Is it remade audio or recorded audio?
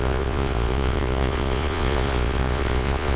remade